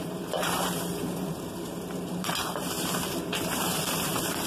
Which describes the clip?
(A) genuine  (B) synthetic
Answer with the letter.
B